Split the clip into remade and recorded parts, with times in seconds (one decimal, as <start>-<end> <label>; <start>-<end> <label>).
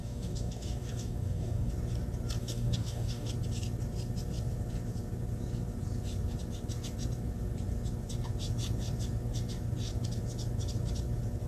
0.0-1.7 remade; 1.7-2.4 recorded; 2.4-3.3 remade; 3.3-11.5 recorded